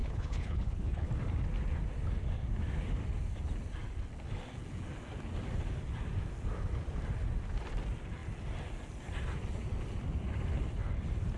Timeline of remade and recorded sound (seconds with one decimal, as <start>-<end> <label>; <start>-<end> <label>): 0.0-1.1 remade; 1.1-11.4 recorded